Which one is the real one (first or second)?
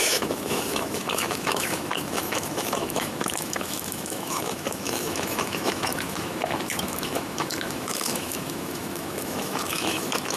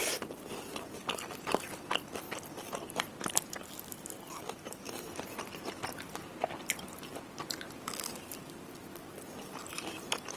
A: second